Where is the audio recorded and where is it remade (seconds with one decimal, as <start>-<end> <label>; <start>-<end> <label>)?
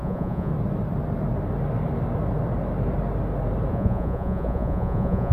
0.0-0.5 remade; 0.5-3.7 recorded; 3.7-5.3 remade